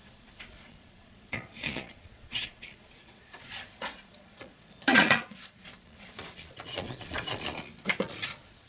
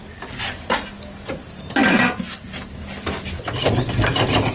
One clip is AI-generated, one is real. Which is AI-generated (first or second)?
first